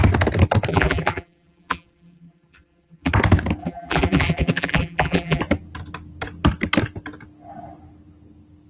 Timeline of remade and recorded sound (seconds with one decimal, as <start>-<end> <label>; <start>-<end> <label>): 0.0-0.7 recorded; 0.7-3.1 remade; 3.1-3.6 recorded; 3.6-5.4 remade; 5.4-8.7 recorded

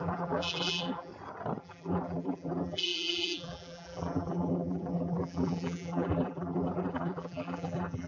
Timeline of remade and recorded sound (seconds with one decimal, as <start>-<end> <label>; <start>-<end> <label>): 0.0-1.1 remade; 1.1-1.6 recorded; 1.6-8.1 remade

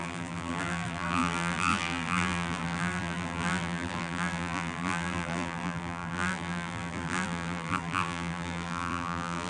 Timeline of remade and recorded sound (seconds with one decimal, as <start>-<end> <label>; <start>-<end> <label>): 0.0-9.5 remade